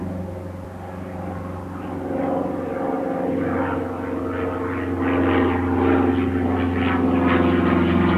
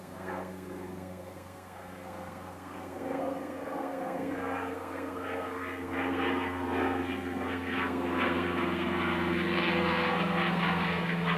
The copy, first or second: second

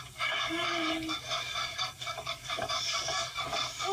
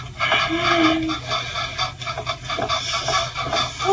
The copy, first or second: first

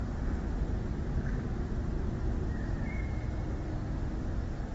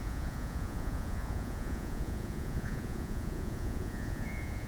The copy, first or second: second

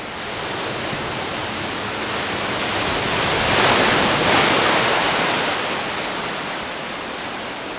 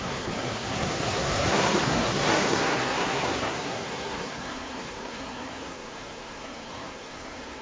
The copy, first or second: second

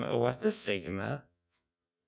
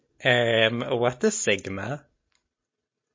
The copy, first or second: first